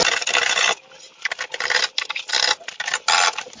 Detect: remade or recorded recorded